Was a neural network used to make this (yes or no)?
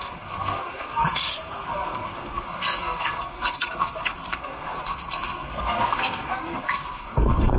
yes